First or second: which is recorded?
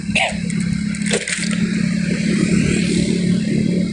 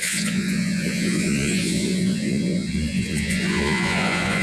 first